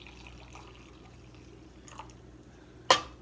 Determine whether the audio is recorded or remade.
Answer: recorded